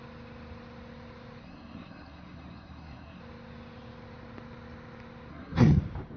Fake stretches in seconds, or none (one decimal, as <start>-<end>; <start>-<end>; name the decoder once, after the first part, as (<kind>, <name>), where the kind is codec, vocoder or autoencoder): 1.4-3.2 (codec, SNAC); 5.3-5.8